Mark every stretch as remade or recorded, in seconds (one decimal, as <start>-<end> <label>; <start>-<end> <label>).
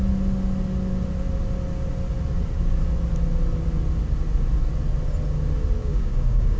0.0-5.8 recorded; 5.8-6.6 remade